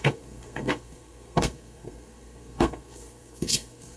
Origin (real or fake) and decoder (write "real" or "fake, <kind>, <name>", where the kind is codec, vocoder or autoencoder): fake, codec, SNAC